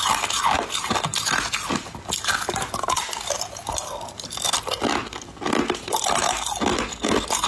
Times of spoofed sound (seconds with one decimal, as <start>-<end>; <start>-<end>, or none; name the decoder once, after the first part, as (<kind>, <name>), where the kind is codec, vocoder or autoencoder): 3.8-5.4 (vocoder, BigVGAN v2)